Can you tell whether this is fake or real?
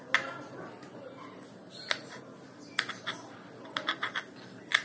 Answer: real